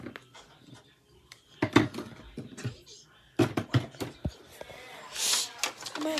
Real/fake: real